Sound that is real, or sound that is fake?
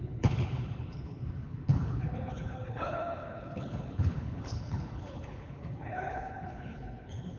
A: fake